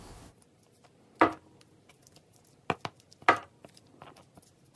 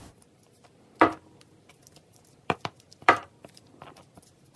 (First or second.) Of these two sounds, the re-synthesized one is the second